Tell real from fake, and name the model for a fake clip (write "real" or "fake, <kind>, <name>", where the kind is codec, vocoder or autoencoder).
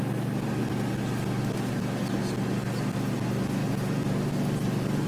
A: real